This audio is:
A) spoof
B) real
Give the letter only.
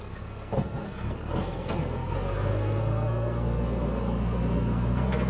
A